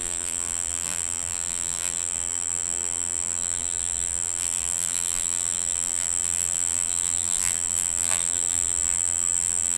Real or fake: fake